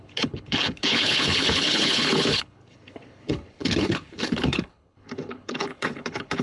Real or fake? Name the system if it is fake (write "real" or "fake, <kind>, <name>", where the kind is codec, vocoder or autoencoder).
fake, codec, HILCodec